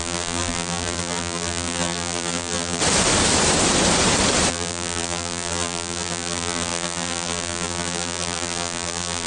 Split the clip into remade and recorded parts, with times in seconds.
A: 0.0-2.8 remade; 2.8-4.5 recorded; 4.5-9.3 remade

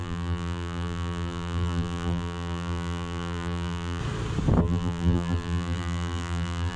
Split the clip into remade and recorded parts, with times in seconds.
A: 0.0-4.0 remade; 4.0-4.6 recorded; 4.6-6.8 remade

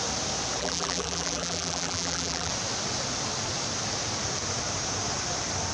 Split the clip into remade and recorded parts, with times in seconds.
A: 0.0-0.6 recorded; 0.6-2.5 remade; 2.5-5.7 recorded

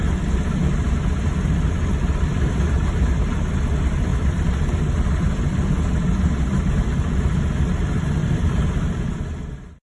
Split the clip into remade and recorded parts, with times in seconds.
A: 0.0-2.3 recorded; 2.3-3.5 remade; 3.5-8.2 recorded; 8.2-9.1 remade; 9.1-9.9 recorded